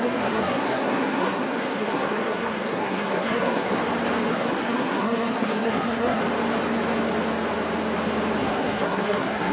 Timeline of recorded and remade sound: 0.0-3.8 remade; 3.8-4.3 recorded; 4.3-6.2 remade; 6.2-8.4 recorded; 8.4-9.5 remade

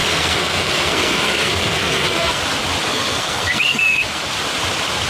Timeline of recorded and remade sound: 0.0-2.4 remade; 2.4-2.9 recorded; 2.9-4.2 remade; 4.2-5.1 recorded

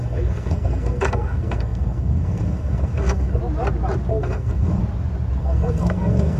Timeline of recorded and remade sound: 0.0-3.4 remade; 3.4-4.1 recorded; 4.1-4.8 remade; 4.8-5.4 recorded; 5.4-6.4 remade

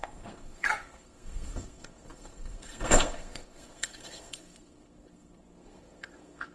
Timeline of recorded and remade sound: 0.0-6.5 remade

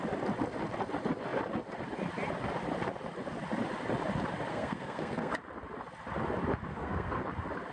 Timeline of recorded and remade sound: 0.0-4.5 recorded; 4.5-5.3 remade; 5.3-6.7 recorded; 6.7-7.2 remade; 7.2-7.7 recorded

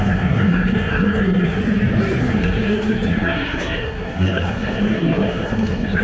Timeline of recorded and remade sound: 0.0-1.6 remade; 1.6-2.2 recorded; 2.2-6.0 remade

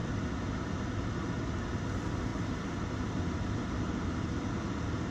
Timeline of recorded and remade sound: 0.0-5.1 recorded

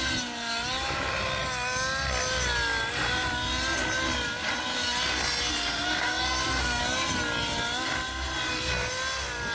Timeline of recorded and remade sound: 0.0-5.5 recorded; 5.5-6.8 remade; 6.8-9.5 recorded